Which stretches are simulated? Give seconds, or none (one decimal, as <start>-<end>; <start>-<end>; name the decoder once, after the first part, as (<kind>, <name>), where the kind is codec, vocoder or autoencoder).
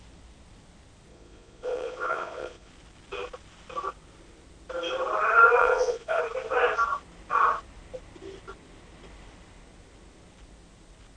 1.1-2.7 (vocoder, Vocos); 5.6-6.2